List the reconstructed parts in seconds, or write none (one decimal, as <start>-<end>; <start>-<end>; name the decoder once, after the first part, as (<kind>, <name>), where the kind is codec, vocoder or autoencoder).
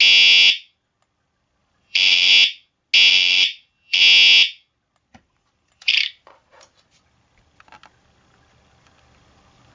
1.6-2.3 (vocoder, BigVGAN v2); 3.1-4.0; 5.1-6.7